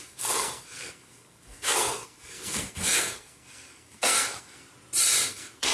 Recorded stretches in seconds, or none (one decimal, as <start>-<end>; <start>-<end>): 4.7-5.3